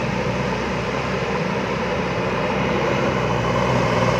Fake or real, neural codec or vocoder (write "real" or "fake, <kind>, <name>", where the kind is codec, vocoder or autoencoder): fake, vocoder, BigVGAN v2